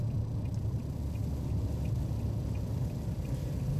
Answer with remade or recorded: recorded